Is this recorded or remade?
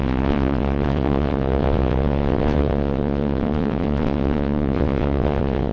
remade